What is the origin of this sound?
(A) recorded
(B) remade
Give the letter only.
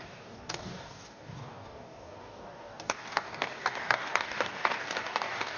B